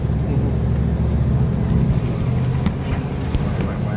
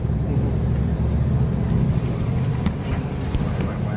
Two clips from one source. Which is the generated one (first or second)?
second